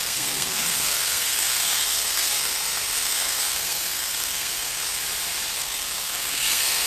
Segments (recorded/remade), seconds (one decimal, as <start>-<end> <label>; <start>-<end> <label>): 0.0-5.0 remade; 5.0-5.5 recorded; 5.5-6.9 remade